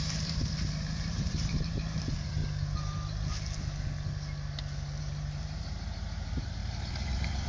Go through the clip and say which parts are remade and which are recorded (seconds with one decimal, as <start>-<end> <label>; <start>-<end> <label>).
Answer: 0.0-2.4 remade; 2.4-5.0 recorded; 5.0-6.6 remade; 6.6-7.5 recorded